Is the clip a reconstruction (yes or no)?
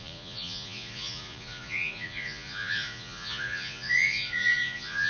yes